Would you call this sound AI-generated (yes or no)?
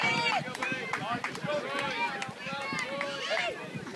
no